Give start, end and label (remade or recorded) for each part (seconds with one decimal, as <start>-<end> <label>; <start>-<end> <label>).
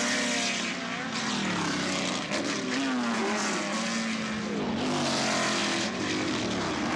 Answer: 0.0-5.6 recorded; 5.6-6.1 remade; 6.1-7.0 recorded